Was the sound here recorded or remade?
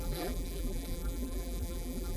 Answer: remade